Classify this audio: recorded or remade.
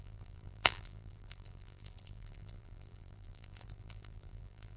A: remade